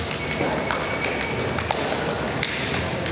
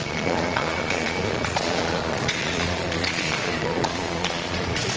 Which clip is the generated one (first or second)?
second